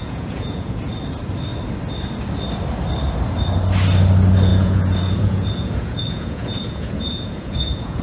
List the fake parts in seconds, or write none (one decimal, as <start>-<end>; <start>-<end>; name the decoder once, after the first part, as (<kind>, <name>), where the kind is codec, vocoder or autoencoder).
0.0-0.8 (vocoder, Vocos); 4.5-8.0